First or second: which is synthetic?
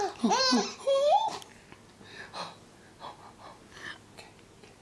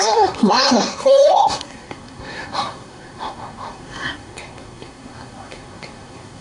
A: second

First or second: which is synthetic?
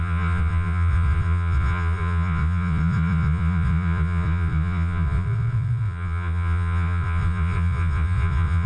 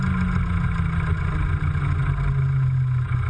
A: first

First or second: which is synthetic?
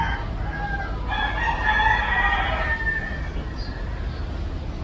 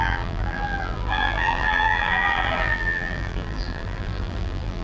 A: second